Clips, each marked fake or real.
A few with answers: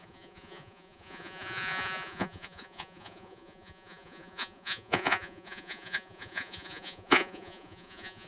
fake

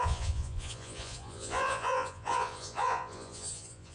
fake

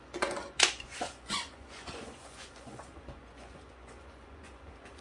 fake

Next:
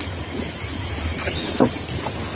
real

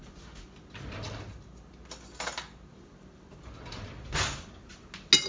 real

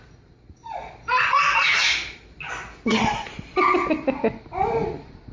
real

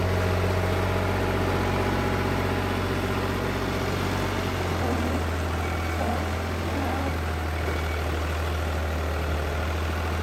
real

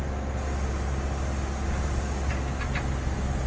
real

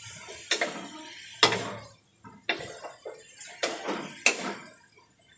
real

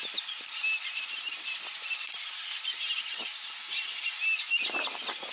real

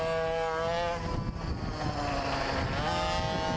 real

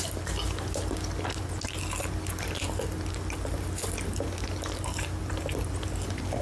real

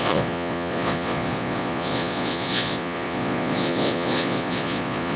fake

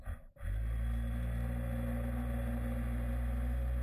real